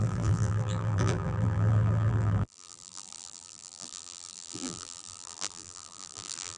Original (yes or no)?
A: no